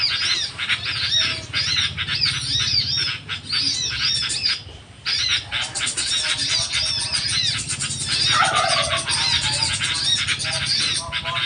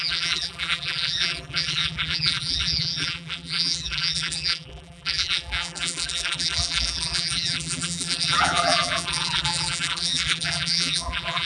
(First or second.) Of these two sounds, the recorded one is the first